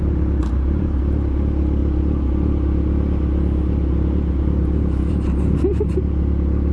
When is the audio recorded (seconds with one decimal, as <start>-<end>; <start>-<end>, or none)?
0.0-0.4; 1.0-6.7